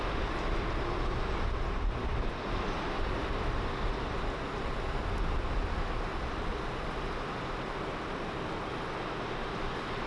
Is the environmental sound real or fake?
real